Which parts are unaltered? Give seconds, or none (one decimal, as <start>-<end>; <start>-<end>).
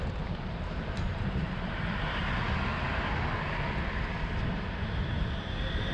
2.2-4.4